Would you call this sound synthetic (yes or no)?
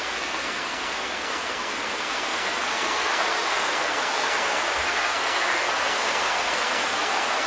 yes